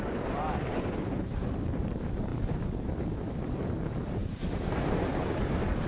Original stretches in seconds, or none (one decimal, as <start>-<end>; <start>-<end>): none